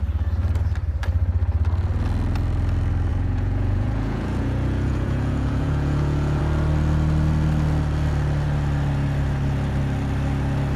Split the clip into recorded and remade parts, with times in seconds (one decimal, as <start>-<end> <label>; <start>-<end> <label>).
0.0-3.1 recorded; 3.1-6.4 remade; 6.4-10.8 recorded